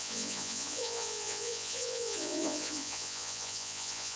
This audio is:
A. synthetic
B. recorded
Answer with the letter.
A